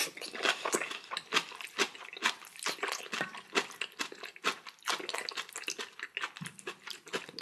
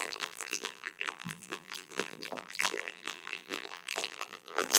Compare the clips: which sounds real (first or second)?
first